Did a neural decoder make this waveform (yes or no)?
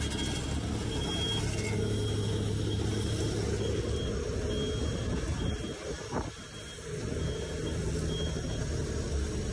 no